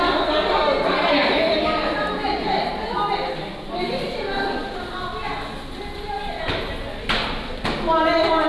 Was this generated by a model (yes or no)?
no